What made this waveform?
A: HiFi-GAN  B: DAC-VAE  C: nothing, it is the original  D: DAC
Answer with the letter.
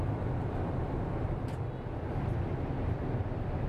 C